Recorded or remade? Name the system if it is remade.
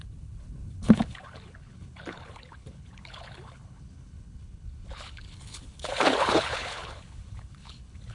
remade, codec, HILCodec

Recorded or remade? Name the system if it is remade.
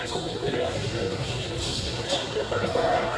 remade, codec, SNAC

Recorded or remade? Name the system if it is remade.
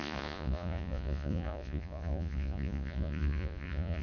remade, vocoder, Vocos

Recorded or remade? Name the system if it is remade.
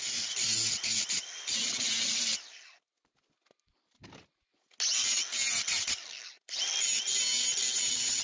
recorded